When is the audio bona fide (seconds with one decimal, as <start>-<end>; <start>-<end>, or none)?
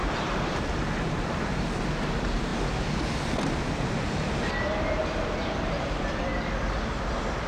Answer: 2.5-3.4; 6.3-7.5